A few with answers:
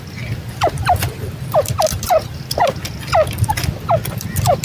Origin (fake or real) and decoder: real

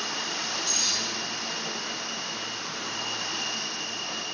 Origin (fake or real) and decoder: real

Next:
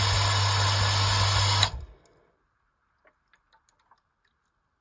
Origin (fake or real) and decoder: real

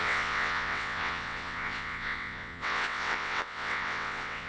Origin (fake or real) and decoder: fake, vocoder, WaveNeXt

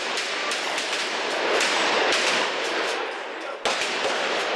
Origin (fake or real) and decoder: real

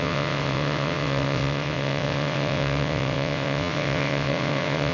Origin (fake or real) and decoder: fake, vocoder, WaveNeXt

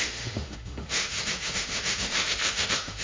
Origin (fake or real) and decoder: fake, autoencoder, DAC-VAE